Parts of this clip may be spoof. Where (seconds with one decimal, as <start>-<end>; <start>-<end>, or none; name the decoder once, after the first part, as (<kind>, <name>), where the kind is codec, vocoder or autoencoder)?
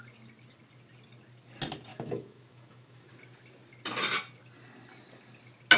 1.9-3.1 (autoencoder, DAC-VAE)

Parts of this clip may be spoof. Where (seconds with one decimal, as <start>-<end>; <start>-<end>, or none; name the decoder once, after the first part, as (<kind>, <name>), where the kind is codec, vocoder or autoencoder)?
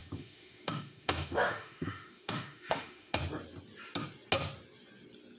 0.0-3.2 (autoencoder, DAC-VAE)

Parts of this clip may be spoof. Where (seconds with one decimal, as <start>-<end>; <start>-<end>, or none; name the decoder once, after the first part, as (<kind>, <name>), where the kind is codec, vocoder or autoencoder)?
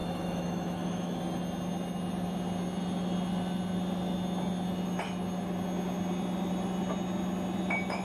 0.0-1.2 (autoencoder, DAC-VAE)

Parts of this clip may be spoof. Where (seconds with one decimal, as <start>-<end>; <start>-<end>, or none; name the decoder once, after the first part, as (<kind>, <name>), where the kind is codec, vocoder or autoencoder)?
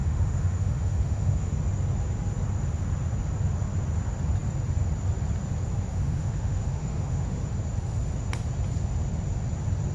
0.0-1.5 (autoencoder, DAC-VAE); 5.9-7.5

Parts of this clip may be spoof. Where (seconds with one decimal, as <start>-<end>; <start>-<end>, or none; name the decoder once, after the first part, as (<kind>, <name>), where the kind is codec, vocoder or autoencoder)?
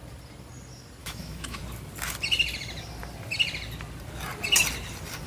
1.0-1.6 (autoencoder, DAC-VAE)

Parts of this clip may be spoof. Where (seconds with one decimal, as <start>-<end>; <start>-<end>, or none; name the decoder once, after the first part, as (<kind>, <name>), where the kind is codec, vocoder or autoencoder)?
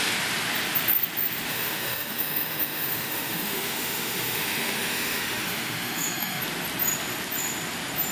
1.5-6.4 (autoencoder, DAC-VAE)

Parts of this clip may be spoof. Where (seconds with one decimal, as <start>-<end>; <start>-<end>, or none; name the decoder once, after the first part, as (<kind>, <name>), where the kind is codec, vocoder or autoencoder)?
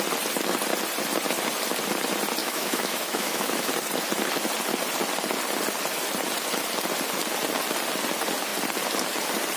2.4-3.7 (autoencoder, DAC-VAE)